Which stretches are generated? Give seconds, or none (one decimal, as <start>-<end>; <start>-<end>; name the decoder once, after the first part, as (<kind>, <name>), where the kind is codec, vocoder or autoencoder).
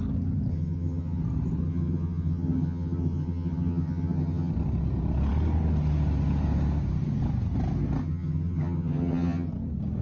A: 0.5-1.2 (vocoder, HiFi-GAN); 1.6-4.5; 8.0-9.5